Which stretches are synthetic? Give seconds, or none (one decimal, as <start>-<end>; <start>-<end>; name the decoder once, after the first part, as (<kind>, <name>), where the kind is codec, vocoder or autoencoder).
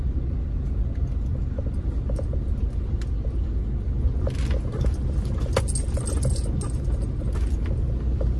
none